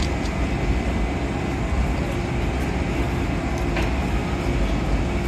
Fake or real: real